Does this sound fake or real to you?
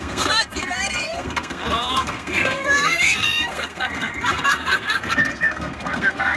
fake